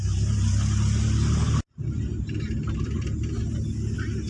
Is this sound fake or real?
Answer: real